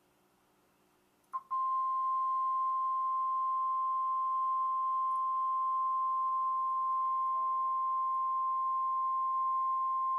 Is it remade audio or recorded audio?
recorded